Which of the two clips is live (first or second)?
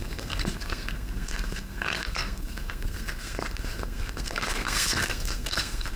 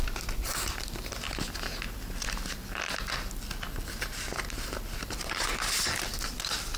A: second